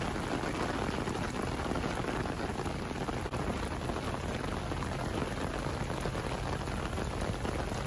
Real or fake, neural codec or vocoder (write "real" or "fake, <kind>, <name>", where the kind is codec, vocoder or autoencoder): real